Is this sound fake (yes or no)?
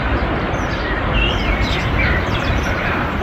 yes